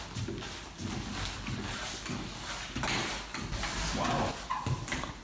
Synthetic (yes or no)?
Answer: no